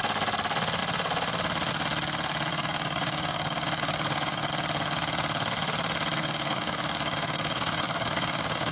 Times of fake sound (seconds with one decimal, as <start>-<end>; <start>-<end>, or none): 2.5-4.5; 6.2-8.7